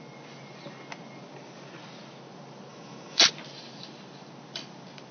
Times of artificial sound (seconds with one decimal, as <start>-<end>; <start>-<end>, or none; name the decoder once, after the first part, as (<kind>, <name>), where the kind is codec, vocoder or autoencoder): 2.7-3.2 (autoencoder, DAC-VAE)